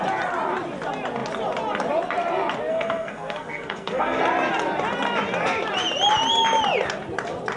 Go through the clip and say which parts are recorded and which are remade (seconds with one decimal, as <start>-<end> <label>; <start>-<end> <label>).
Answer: 0.0-2.7 recorded; 2.7-4.2 remade; 4.2-7.6 recorded